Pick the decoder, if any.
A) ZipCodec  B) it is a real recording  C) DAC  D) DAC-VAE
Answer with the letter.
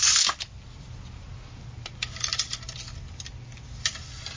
B